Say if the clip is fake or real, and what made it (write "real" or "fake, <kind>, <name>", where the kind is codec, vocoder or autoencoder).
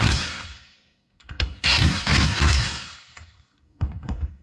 fake, codec, SNAC